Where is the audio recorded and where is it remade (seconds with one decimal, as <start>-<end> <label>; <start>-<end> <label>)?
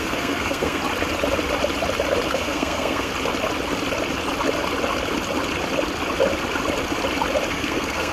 0.0-0.8 remade; 0.8-2.3 recorded; 2.3-3.1 remade; 3.1-7.5 recorded; 7.5-8.1 remade